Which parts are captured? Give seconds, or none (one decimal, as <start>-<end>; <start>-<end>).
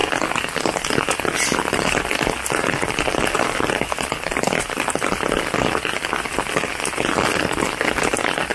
0.0-8.5